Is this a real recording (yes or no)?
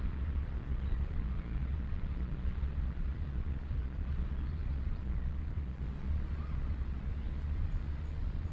no